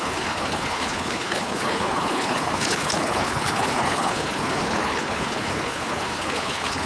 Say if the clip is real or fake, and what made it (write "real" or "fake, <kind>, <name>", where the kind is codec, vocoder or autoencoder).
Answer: fake, codec, HILCodec